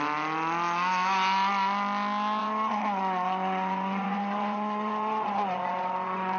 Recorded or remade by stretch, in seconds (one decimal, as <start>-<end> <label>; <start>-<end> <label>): 0.0-2.4 recorded; 2.4-6.4 remade